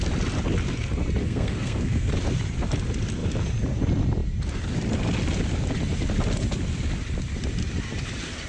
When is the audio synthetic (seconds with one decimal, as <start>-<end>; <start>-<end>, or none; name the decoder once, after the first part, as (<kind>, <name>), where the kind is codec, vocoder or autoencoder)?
1.2-2.1 (codec, SNAC)